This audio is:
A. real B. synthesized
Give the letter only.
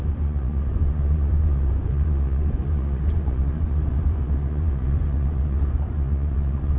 B